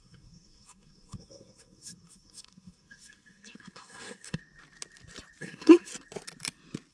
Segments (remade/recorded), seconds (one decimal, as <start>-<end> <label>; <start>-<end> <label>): 0.0-4.4 remade; 4.4-5.4 recorded; 5.4-5.9 remade; 5.9-6.9 recorded